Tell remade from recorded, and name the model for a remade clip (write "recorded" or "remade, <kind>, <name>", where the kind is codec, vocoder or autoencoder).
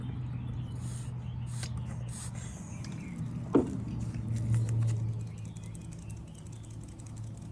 recorded